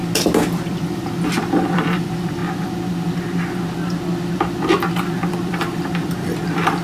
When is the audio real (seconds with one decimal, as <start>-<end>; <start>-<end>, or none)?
2.4-5.3